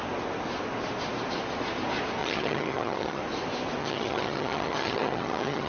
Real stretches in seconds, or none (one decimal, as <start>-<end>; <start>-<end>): 0.0-2.2; 3.2-3.8